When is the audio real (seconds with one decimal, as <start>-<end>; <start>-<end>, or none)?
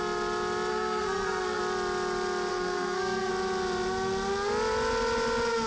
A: 0.0-0.7; 1.6-2.5; 3.3-5.7